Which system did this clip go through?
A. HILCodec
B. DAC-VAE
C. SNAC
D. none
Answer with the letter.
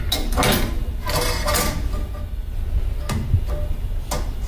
D